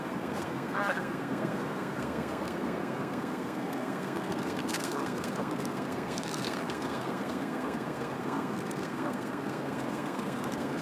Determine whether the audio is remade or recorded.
remade